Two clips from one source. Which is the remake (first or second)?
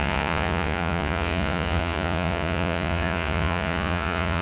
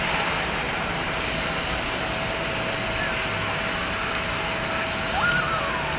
first